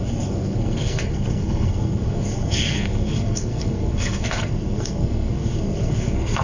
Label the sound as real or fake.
fake